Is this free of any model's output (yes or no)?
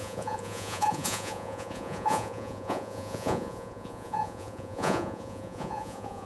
no